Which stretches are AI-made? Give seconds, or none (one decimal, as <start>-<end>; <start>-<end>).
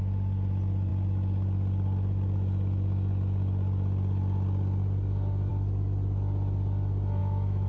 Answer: 7.2-7.7